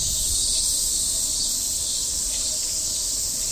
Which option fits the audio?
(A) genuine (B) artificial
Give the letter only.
B